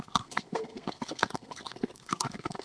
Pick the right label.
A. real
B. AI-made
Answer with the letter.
B